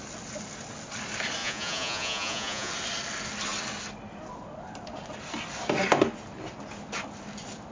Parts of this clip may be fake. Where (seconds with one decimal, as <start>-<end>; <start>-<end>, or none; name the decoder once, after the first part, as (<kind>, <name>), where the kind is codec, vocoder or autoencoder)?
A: 1.4-2.7 (vocoder, Vocos)